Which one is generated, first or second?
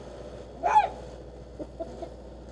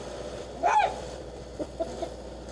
second